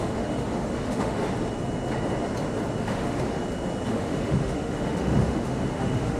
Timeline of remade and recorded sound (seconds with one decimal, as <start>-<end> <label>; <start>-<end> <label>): 0.0-1.2 remade; 1.2-2.8 recorded; 2.8-3.4 remade; 3.4-3.9 recorded; 3.9-6.2 remade

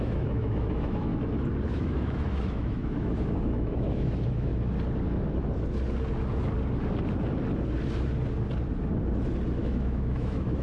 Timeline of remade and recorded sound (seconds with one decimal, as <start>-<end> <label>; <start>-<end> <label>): 0.0-1.1 remade; 1.1-1.7 recorded; 1.7-4.5 remade; 4.5-9.6 recorded; 9.6-10.6 remade

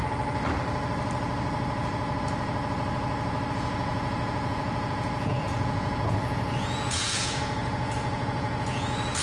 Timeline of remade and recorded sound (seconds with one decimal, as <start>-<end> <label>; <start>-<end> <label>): 0.0-3.5 recorded; 3.5-9.2 remade

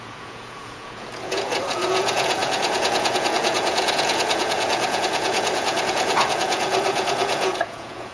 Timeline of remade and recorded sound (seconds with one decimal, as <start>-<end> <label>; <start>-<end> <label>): 0.0-8.1 remade

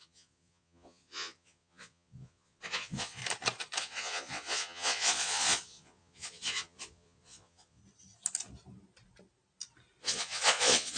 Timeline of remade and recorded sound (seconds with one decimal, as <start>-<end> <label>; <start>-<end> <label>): 0.0-3.2 remade; 3.2-3.8 recorded; 3.8-7.8 remade; 7.8-10.0 recorded; 10.0-11.0 remade